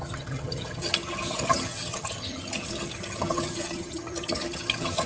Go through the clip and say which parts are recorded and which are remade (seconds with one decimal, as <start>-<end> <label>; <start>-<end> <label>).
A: 0.0-5.1 remade